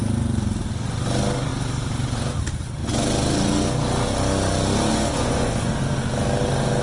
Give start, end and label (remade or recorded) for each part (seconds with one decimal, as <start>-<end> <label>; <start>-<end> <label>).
0.0-4.9 recorded; 4.9-5.7 remade; 5.7-6.8 recorded

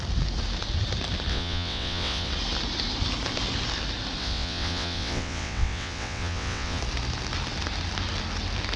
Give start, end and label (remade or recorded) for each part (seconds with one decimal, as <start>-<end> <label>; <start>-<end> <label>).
0.0-1.3 recorded; 1.3-2.3 remade; 2.3-4.2 recorded; 4.2-6.8 remade; 6.8-8.8 recorded